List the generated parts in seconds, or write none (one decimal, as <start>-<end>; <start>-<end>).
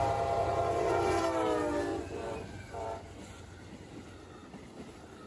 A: 0.4-1.2; 1.9-3.4